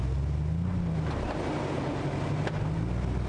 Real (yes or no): yes